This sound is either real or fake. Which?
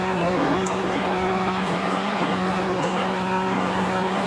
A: fake